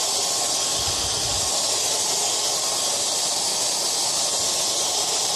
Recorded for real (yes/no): yes